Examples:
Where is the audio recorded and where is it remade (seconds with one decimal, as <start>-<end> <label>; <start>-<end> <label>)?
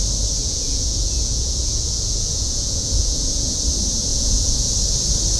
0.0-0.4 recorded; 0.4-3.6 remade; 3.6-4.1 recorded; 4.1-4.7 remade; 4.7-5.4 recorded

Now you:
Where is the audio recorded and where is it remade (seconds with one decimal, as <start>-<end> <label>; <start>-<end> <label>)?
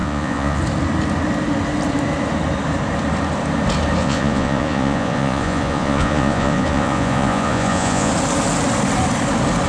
0.0-0.6 remade; 0.6-4.0 recorded; 4.0-8.1 remade; 8.1-9.7 recorded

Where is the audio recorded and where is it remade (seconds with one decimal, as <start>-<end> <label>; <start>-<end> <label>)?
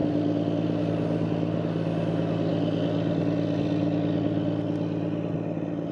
0.0-5.9 recorded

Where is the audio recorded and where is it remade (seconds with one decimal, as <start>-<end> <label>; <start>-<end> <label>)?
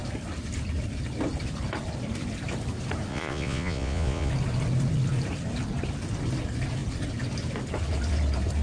0.0-3.1 recorded; 3.1-4.3 remade; 4.3-8.6 recorded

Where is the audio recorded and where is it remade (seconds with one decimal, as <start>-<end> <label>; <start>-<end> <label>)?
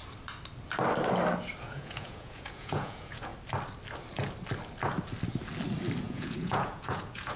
0.0-1.6 recorded; 1.6-3.3 remade; 3.3-6.0 recorded; 6.0-7.4 remade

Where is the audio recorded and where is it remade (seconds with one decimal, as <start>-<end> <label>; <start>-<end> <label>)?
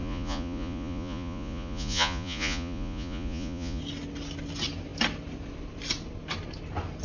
0.0-3.8 remade; 3.8-7.0 recorded